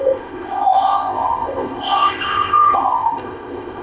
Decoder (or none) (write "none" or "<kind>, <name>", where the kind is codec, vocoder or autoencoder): codec, ZipCodec